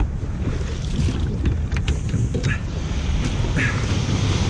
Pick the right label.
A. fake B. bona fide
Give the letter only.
A